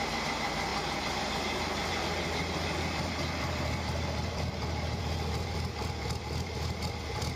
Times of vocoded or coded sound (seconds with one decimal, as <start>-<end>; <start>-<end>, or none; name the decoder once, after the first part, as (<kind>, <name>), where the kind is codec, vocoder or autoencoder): none